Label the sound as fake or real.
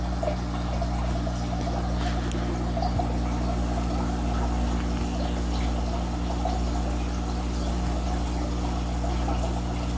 real